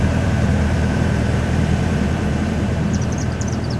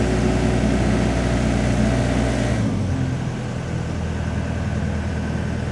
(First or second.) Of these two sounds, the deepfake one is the first